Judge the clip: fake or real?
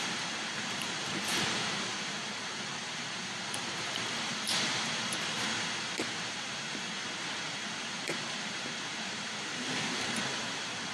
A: fake